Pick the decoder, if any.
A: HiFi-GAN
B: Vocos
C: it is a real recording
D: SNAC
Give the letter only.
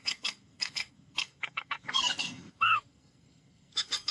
D